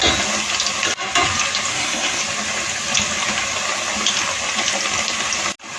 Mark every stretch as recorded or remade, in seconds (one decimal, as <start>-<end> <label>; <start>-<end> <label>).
0.0-1.7 recorded; 1.7-2.2 remade; 2.2-5.8 recorded